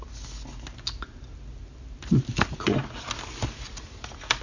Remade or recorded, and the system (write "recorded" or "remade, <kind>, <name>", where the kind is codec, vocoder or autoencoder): recorded